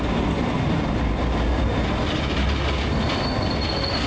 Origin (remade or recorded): recorded